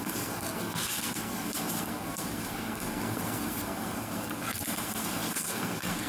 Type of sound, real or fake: fake